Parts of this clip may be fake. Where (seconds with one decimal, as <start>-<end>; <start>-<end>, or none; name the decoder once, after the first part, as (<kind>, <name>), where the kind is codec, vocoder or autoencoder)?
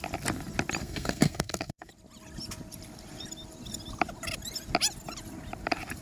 0.8-1.9 (codec, SNAC)